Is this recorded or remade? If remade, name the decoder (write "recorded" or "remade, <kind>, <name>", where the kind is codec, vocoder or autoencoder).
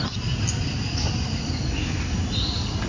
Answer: recorded